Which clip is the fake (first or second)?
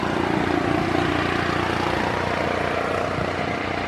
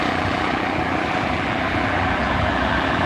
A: second